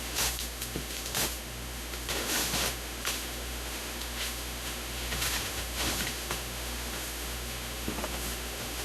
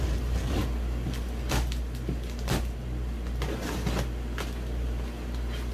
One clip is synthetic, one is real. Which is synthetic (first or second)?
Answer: first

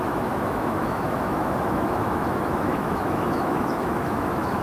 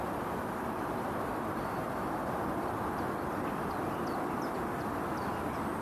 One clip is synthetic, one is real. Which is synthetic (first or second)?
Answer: first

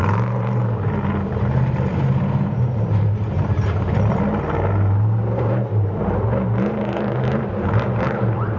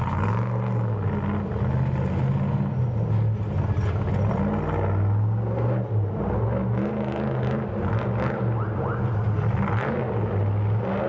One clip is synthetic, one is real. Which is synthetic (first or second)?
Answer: first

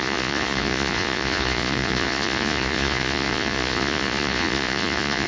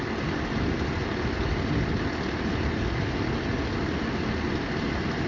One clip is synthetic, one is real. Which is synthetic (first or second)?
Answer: first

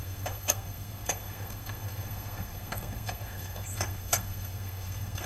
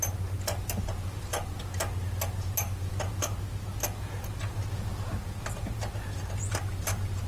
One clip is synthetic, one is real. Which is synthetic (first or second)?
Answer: first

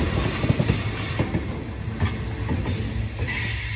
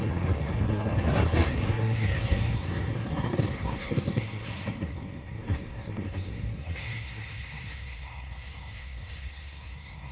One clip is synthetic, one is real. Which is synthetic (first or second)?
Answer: second